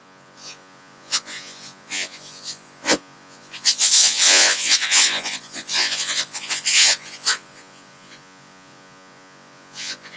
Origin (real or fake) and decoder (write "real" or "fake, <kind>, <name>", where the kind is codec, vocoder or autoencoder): fake, vocoder, Vocos